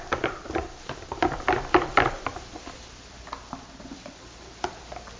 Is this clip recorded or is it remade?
remade